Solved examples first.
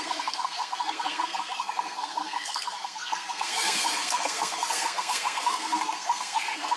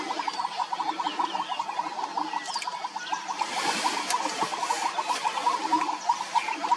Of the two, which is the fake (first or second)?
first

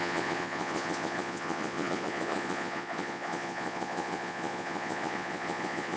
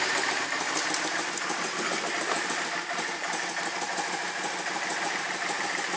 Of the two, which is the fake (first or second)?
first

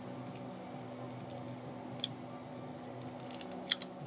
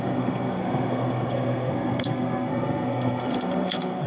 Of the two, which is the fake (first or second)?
second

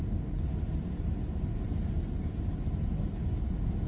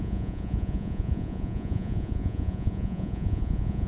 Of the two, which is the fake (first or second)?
second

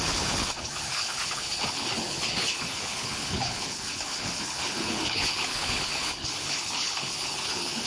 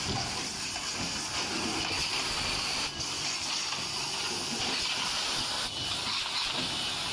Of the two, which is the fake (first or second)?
first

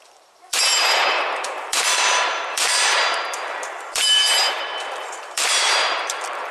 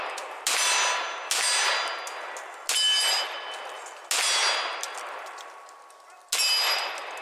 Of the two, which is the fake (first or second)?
first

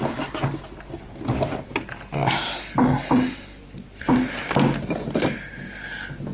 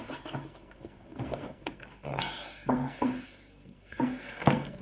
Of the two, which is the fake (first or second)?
second